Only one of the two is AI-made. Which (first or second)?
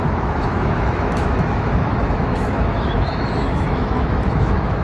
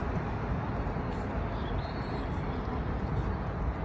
first